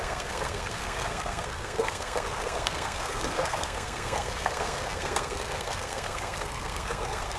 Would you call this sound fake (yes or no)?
yes